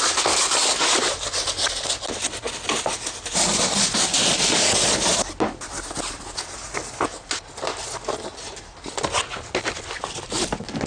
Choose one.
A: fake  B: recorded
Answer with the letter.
B